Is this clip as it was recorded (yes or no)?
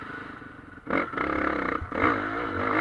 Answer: yes